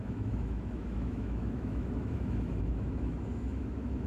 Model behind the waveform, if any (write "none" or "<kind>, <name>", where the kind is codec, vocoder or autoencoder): autoencoder, DAC-VAE